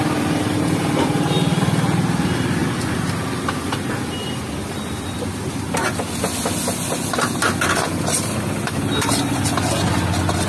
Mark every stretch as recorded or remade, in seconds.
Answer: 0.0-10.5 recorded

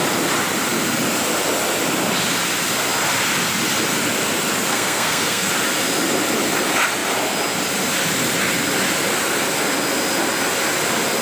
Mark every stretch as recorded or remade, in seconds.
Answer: 0.0-4.7 recorded; 4.7-5.5 remade; 5.5-11.2 recorded